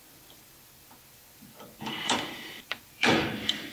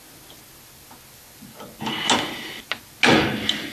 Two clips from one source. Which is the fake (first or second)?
first